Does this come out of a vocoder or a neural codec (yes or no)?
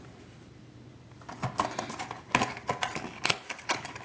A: no